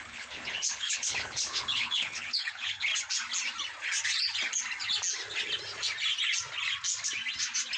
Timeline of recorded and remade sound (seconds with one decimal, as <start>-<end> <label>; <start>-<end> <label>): 0.0-2.9 remade; 2.9-7.8 recorded